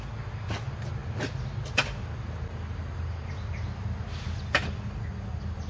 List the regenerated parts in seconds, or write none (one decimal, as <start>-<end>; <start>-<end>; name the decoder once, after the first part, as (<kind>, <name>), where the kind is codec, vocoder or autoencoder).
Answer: none